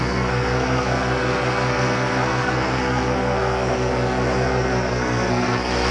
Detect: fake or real fake